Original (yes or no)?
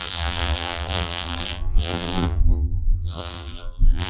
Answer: no